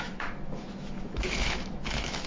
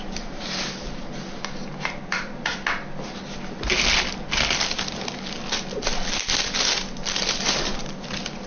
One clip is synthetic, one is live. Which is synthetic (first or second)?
first